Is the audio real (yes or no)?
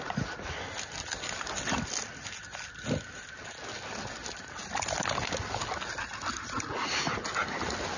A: yes